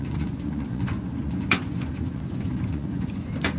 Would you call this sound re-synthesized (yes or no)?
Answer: yes